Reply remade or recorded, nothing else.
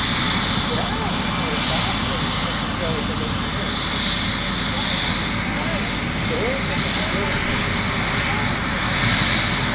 recorded